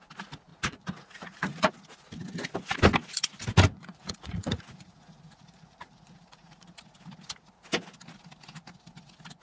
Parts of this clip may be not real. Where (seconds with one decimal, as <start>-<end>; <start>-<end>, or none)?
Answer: 0.5-1.7; 3.7-6.8